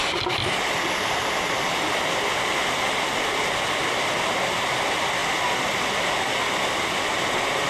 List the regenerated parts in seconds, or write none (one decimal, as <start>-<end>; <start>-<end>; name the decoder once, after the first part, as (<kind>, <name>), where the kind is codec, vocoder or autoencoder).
none